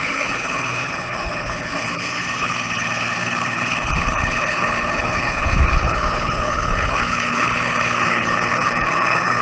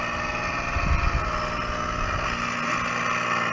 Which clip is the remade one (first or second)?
first